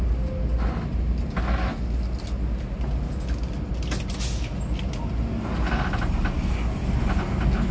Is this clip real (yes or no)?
yes